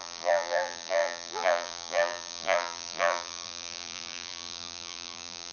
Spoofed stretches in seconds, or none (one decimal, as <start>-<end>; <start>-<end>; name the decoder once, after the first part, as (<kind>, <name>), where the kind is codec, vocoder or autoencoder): 0.0-5.5 (vocoder, BigVGAN v2)